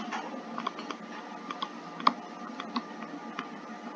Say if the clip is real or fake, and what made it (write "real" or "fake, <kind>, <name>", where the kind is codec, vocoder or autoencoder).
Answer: real